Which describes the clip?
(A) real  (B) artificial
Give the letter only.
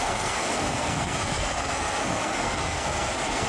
B